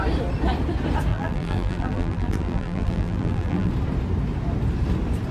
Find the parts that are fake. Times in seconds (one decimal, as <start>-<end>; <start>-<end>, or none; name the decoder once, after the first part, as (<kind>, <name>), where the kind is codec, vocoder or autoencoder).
1.1-3.7 (vocoder, BigVGAN v2)